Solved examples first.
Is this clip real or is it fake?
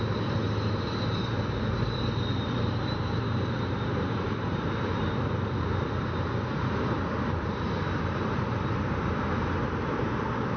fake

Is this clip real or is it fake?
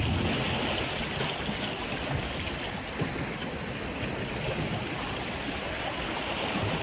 real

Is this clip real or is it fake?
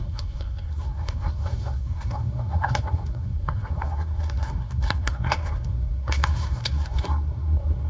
fake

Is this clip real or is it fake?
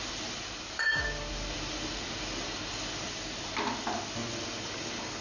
real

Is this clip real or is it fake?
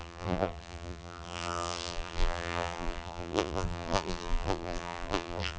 fake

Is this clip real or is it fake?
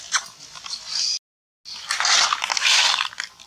real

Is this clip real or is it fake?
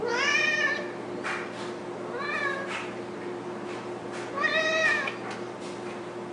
real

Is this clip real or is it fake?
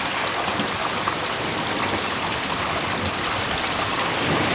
real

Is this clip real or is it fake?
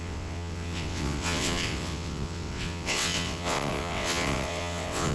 fake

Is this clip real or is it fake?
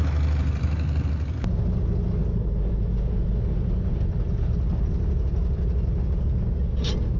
real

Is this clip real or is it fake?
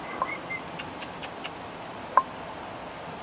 fake